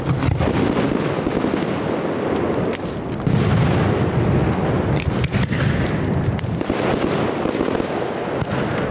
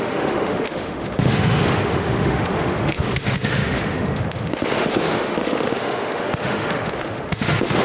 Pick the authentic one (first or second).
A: first